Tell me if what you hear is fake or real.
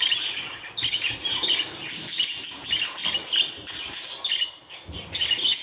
real